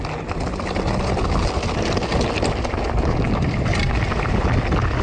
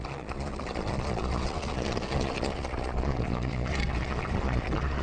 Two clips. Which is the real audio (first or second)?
first